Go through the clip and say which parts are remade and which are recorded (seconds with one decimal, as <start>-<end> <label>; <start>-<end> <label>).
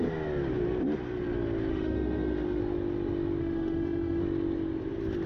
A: 0.0-1.7 recorded; 1.7-2.6 remade; 2.6-3.4 recorded; 3.4-4.2 remade; 4.2-5.3 recorded